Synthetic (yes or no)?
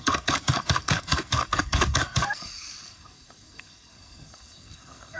yes